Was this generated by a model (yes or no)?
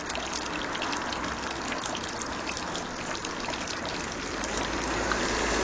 no